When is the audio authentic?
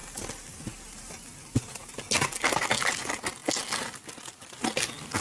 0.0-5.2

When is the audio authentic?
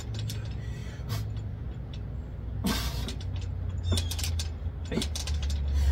0.0-5.9